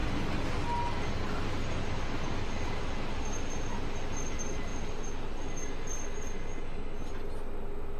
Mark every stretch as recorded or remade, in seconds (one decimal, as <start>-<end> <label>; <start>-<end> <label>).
0.0-8.0 recorded